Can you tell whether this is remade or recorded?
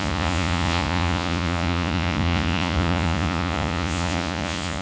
remade